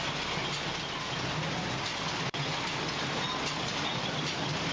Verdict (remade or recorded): recorded